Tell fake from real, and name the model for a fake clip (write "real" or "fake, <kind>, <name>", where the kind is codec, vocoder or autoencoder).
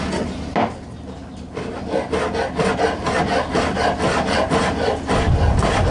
real